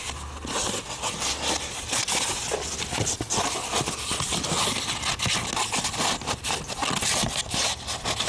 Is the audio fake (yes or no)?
no